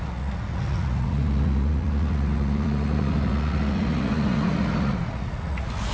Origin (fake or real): fake